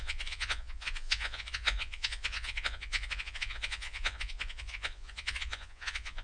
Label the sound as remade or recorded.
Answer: remade